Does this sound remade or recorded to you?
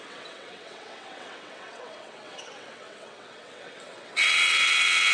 remade